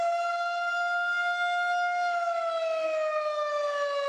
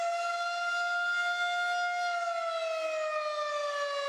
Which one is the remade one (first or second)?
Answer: first